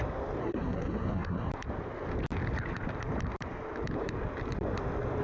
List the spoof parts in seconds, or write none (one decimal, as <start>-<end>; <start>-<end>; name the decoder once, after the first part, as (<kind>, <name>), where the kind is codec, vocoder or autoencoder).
0.4-1.5 (codec, SNAC)